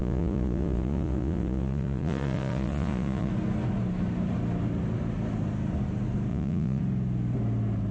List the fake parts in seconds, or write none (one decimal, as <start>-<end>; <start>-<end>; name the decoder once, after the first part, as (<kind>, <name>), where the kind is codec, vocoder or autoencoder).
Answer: 0.0-3.3 (vocoder, Vocos); 6.3-6.8